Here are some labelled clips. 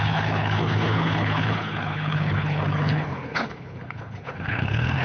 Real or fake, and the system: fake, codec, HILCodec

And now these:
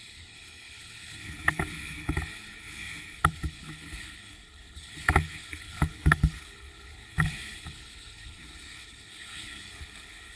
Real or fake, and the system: fake, codec, HILCodec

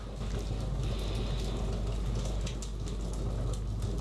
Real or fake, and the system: real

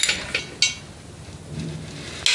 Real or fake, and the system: real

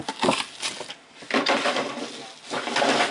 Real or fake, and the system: real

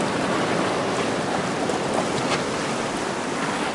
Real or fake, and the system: real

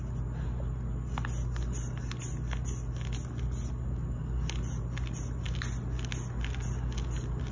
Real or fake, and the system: real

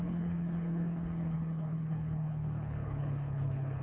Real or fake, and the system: fake, codec, HILCodec